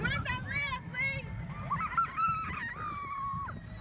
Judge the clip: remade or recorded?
recorded